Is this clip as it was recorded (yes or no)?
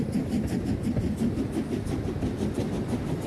yes